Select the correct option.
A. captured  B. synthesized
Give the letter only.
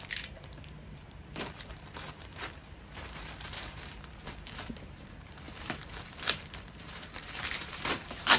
B